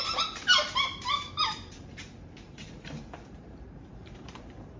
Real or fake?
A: fake